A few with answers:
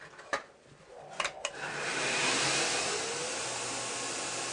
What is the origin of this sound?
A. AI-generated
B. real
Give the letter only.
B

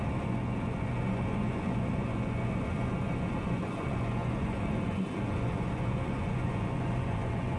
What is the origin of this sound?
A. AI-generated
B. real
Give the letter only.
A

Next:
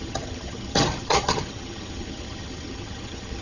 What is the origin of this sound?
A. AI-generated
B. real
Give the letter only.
A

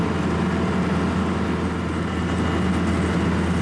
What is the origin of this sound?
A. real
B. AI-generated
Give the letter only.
A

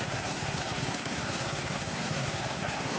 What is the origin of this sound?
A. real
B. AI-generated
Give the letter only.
B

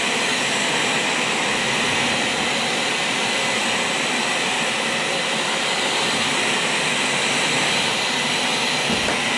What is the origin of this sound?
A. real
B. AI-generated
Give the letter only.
A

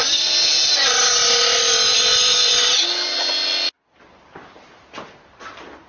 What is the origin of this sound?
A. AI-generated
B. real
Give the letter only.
B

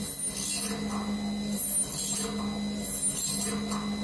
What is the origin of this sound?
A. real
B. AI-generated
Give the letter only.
A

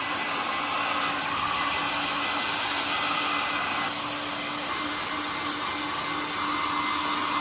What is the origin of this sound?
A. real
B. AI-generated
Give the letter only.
A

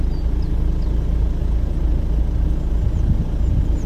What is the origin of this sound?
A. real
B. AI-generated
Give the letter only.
A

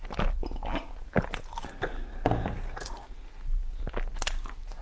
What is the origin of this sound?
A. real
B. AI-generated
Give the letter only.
A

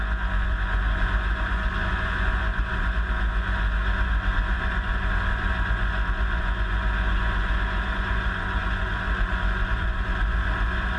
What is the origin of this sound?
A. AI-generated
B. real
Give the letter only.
A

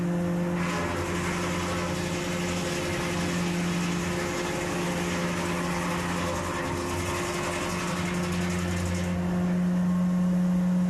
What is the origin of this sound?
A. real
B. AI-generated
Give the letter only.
A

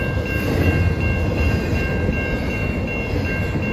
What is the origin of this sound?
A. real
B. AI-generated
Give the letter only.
A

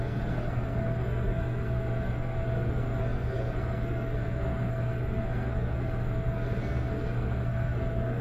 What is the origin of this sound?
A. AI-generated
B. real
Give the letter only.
A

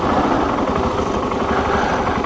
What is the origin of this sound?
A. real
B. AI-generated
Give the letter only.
A